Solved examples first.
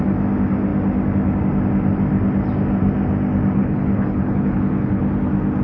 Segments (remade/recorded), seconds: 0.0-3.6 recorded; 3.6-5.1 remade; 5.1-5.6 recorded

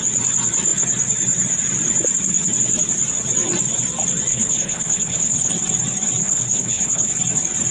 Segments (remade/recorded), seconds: 0.0-4.3 recorded; 4.3-5.5 remade; 5.5-6.2 recorded; 6.2-7.1 remade; 7.1-7.7 recorded

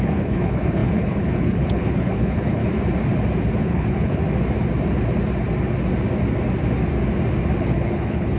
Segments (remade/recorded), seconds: 0.0-2.6 remade; 2.6-3.6 recorded; 3.6-4.2 remade; 4.2-7.6 recorded; 7.6-8.4 remade

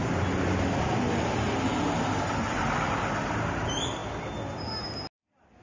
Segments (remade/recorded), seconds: 0.0-5.6 recorded

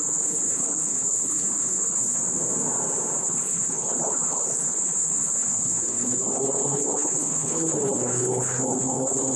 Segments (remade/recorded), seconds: 0.0-2.2 remade; 2.2-3.2 recorded; 3.2-9.4 remade

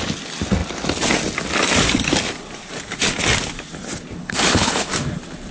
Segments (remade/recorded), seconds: 0.0-4.2 recorded; 4.2-4.9 remade; 4.9-5.5 recorded